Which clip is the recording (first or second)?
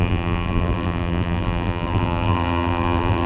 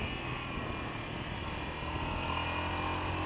second